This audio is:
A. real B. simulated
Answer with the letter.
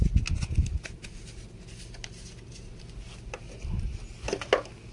A